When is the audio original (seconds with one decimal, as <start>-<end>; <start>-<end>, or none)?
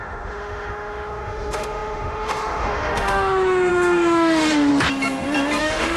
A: 4.7-5.6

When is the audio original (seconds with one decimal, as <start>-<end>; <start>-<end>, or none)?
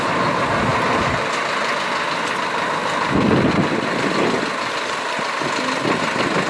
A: 0.0-6.5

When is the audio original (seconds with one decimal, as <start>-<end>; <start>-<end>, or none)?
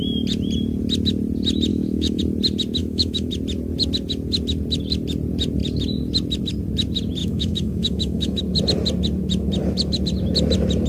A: 0.0-1.7; 2.2-2.8; 3.3-7.2; 8.4-10.9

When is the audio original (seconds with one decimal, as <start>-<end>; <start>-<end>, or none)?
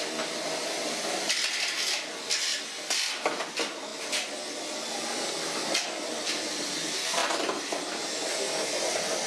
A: 0.0-7.2; 7.8-9.3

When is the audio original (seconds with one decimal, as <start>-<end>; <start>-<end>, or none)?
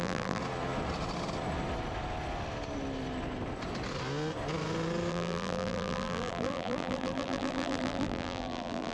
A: 0.4-5.1